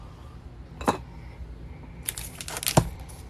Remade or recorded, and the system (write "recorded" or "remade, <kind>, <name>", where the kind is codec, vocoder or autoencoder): recorded